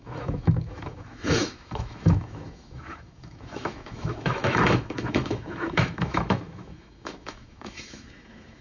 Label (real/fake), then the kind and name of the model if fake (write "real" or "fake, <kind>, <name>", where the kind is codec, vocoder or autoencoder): fake, autoencoder, DAC-VAE